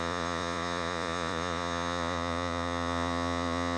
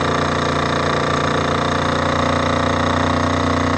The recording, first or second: second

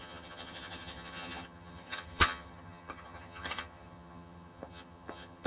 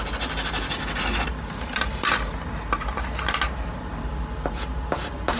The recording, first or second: second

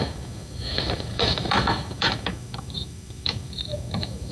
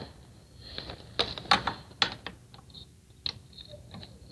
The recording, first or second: second